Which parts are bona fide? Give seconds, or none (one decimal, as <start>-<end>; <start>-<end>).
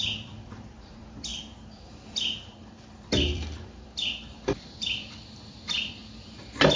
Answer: none